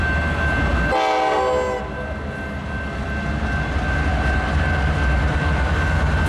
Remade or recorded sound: recorded